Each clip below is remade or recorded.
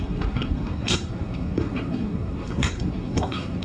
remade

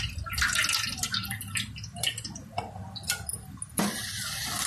recorded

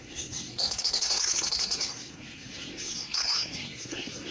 remade